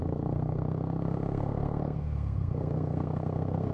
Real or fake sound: fake